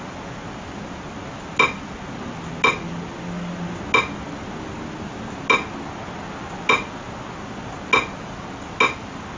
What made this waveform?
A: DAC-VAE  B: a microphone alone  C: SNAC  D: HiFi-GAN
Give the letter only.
B